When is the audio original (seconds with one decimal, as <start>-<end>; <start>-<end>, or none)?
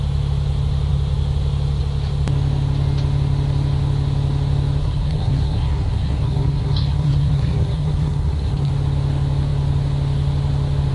0.0-4.8; 8.7-10.9